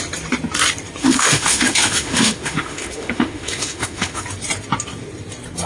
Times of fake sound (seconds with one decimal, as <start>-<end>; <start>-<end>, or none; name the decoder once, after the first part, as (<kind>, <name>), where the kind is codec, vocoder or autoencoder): 1.0-4.2 (autoencoder, DAC-VAE)